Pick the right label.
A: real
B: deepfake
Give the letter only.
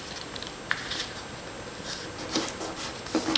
A